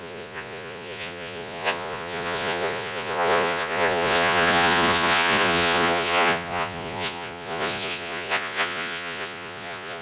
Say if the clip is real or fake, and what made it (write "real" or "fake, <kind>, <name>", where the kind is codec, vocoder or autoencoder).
fake, vocoder, Vocos